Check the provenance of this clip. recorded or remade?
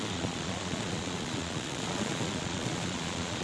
remade